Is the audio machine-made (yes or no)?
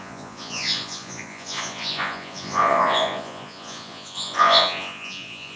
yes